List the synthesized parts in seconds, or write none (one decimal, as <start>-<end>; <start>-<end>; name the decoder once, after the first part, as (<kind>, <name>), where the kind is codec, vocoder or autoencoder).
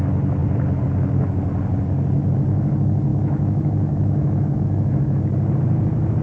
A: 3.1-5.2 (autoencoder, DAC-VAE)